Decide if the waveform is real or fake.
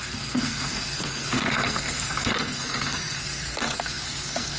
fake